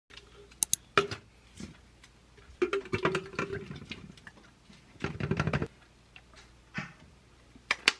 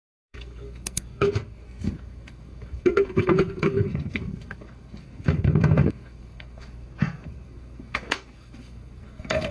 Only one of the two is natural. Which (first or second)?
first